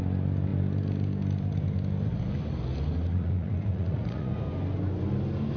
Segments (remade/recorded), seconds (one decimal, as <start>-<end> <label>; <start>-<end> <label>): 0.0-3.1 recorded; 3.1-4.3 remade; 4.3-5.6 recorded